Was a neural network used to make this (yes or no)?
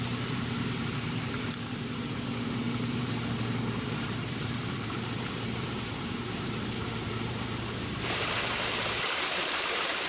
yes